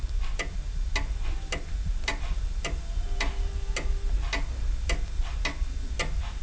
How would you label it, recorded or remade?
recorded